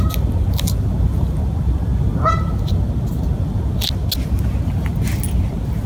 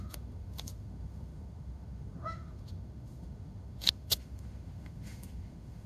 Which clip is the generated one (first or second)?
second